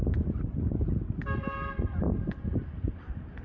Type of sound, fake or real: real